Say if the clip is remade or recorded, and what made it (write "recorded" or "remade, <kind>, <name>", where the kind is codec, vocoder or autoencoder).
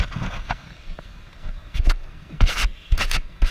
remade, codec, SNAC